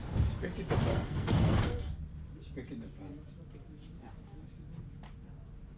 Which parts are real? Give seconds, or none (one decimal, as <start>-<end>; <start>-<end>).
0.0-0.9; 2.0-5.8